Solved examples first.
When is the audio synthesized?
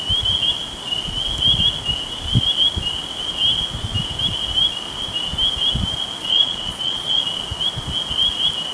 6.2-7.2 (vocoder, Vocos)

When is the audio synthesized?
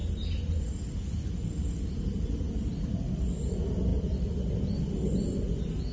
none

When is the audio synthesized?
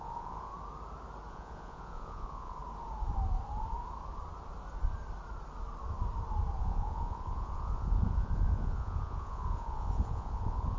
0.0-0.5 (vocoder, Vocos); 1.3-2.6; 6.6-10.8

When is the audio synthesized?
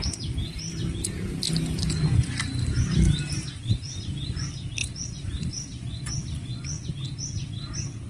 4.8-6.9 (vocoder, Vocos)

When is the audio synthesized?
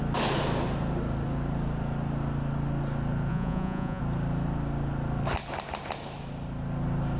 3.3-4.0 (vocoder, Vocos)